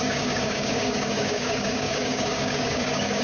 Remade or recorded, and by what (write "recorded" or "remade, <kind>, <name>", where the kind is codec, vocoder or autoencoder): remade, codec, DAC